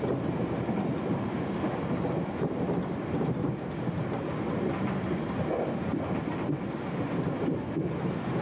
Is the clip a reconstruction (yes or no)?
no